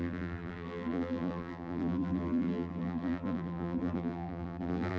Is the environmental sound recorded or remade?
remade